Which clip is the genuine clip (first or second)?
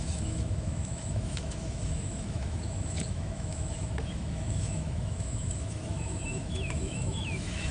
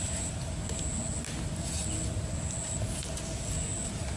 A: second